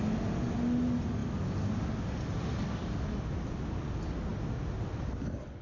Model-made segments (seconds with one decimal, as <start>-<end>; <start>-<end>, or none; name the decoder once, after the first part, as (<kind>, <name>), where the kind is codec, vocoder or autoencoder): none